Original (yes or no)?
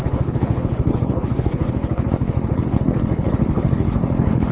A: no